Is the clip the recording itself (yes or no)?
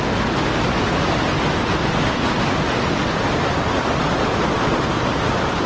yes